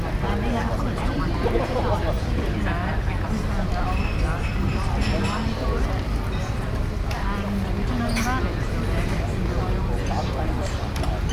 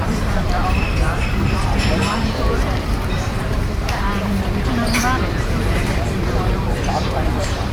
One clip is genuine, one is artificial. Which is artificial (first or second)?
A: second